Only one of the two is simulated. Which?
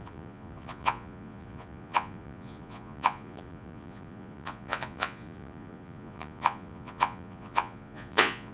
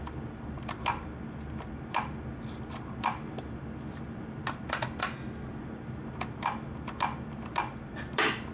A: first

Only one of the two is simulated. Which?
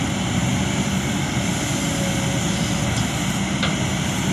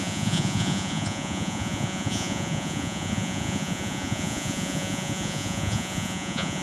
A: second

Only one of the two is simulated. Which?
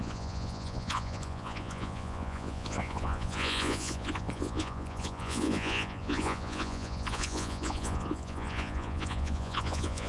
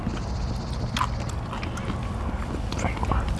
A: first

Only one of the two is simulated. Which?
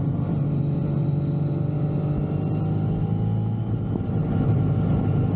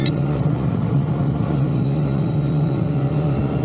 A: second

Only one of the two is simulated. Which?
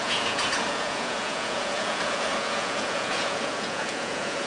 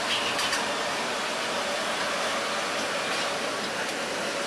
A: first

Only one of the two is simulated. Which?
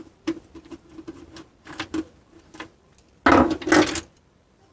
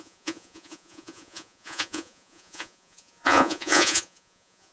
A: second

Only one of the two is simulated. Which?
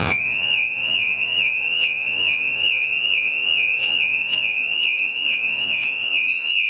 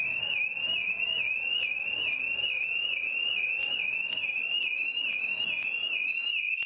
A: first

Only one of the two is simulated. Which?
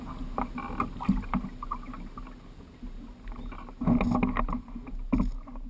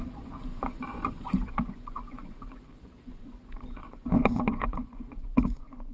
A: second